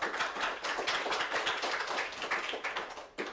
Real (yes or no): yes